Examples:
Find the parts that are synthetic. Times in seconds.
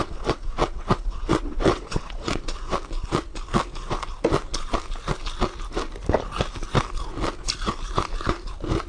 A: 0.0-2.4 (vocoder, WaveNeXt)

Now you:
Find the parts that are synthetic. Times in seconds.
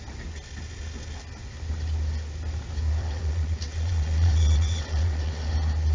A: 3.0-5.5 (vocoder, WaveNeXt)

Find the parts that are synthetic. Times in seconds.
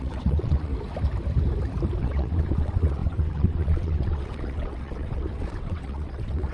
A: 0.0-0.7 (vocoder, WaveNeXt); 2.0-6.5